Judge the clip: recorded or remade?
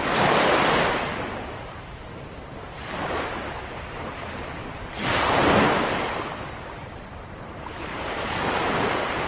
remade